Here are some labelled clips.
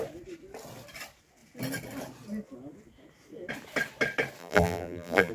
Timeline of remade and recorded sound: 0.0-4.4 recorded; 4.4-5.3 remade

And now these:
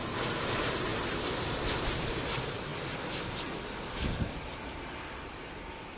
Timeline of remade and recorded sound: 0.0-0.9 remade; 0.9-1.7 recorded; 1.7-2.7 remade; 2.7-6.0 recorded